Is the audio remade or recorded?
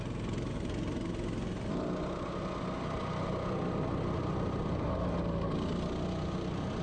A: recorded